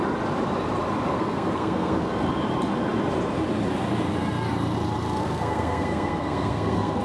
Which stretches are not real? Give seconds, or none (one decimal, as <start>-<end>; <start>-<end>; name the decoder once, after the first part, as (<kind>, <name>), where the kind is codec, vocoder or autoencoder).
1.1-2.1 (codec, SNAC); 5.2-7.0